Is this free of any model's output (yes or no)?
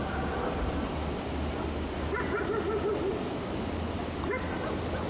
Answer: yes